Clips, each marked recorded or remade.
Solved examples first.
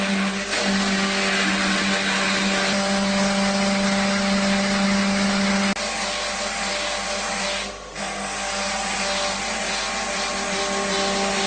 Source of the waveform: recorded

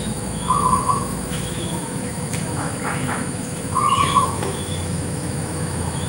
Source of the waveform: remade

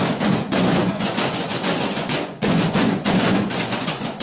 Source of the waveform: remade